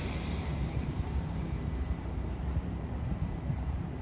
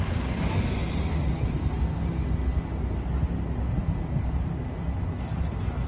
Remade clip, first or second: first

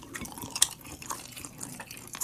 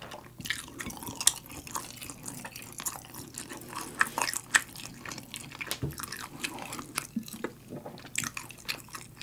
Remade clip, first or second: first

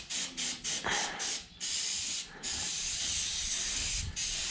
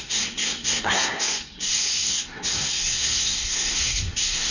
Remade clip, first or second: second